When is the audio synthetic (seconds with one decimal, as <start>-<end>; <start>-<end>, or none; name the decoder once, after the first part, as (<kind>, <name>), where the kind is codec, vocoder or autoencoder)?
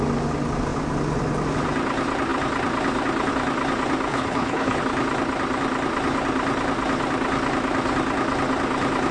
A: 4.1-4.8 (codec, HILCodec)